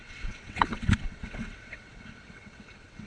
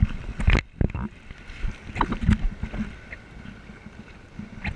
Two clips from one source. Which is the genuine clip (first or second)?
second